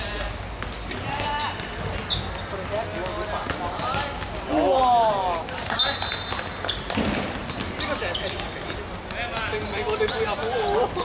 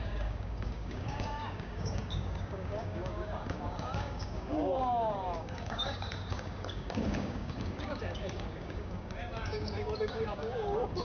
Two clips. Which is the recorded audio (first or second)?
first